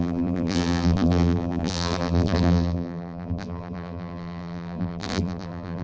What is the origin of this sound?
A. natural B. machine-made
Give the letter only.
B